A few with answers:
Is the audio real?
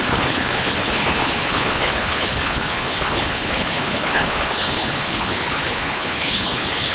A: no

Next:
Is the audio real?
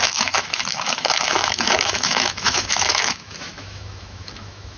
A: no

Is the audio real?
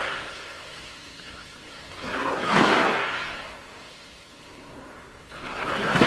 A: no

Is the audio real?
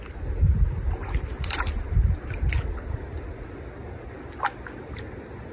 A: yes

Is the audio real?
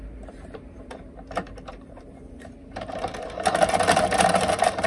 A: no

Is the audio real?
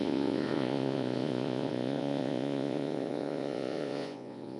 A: no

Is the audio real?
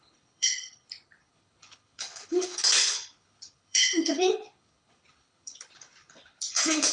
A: no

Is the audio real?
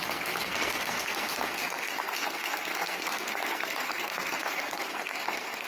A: no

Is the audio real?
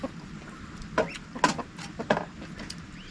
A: yes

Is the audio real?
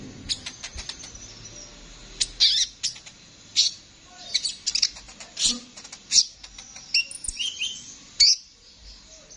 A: yes